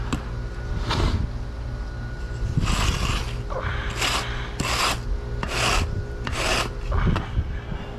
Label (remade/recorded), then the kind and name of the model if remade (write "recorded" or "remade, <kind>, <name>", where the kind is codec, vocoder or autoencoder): recorded